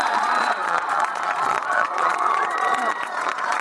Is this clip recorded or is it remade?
remade